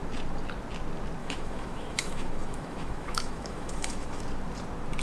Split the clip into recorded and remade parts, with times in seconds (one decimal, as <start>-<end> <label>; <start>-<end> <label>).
0.0-1.2 recorded; 1.2-4.2 remade; 4.2-5.0 recorded